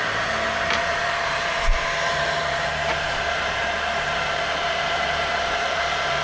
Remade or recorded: remade